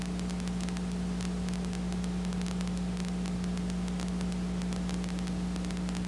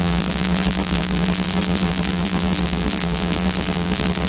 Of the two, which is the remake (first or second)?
second